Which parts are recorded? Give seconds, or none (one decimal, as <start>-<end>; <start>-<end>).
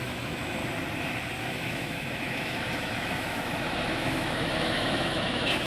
0.6-1.4